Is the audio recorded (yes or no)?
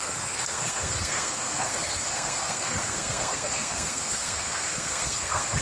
no